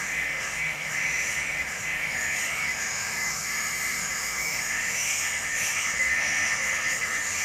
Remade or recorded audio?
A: remade